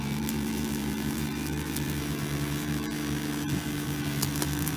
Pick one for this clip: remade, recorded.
remade